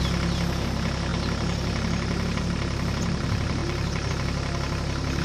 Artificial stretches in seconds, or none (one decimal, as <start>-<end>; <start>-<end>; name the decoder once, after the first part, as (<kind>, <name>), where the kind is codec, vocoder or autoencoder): 1.1-2.4 (vocoder, BigVGAN v2); 3.6-4.1